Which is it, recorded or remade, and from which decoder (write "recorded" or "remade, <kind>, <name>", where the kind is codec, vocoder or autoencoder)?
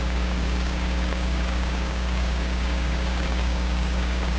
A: remade, codec, DAC